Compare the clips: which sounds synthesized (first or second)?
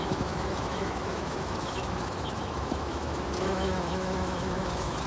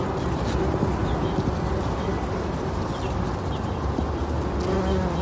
first